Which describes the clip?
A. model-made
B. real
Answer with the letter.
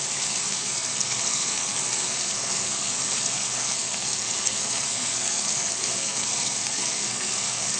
A